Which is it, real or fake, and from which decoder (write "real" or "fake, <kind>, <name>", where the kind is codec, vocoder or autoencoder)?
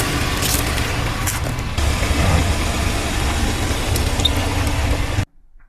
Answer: real